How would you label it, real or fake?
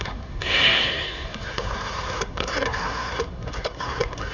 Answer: fake